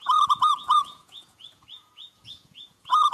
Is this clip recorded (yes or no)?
no